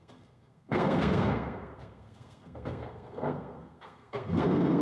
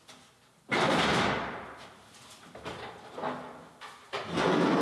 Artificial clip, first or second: first